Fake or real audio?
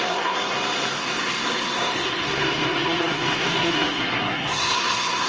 fake